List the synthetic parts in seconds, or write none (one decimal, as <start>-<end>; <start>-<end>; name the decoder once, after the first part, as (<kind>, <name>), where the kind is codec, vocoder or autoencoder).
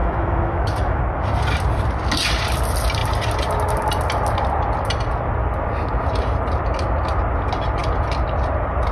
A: 0.0-1.0 (autoencoder, DAC-VAE)